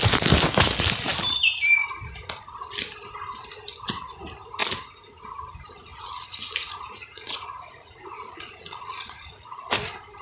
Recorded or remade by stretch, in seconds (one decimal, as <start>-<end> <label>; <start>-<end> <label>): 0.0-5.9 recorded; 5.9-9.6 remade; 9.6-10.2 recorded